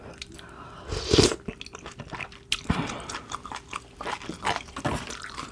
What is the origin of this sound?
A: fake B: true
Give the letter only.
B